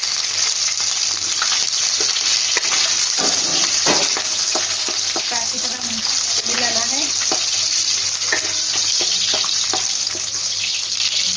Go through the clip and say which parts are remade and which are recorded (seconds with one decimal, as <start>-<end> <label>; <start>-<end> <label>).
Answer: 0.0-11.4 recorded